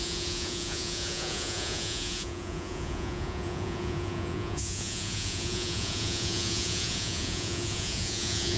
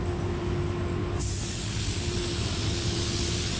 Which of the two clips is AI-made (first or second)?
first